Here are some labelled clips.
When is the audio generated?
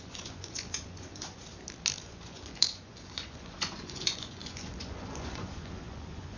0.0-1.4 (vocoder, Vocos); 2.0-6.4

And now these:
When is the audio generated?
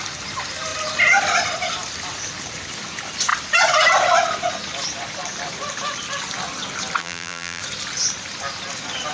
7.0-7.6 (vocoder, BigVGAN v2)